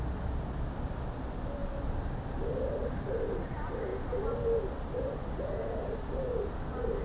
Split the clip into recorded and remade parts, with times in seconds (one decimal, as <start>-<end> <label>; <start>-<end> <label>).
0.0-7.0 recorded